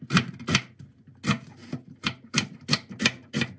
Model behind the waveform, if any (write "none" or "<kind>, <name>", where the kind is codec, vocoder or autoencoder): none